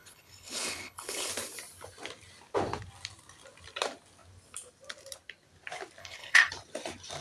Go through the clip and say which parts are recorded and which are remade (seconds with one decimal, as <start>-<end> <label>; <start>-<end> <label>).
0.0-1.3 remade; 1.3-6.0 recorded; 6.0-6.5 remade; 6.5-7.2 recorded